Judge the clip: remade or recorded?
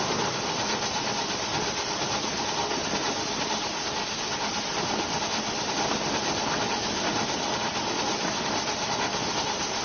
recorded